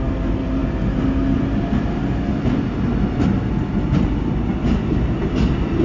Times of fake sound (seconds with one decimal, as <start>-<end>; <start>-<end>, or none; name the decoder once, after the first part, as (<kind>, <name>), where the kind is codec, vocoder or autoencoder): none